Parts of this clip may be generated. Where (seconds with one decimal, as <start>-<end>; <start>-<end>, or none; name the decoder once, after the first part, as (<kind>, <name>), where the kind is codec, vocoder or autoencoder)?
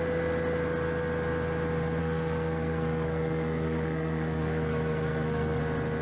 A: 2.0-5.6 (codec, SNAC)